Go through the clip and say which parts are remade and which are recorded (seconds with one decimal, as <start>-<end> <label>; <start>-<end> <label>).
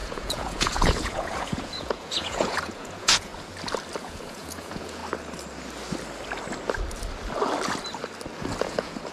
0.0-3.3 remade; 3.3-4.0 recorded; 4.0-5.0 remade; 5.0-8.6 recorded; 8.6-9.1 remade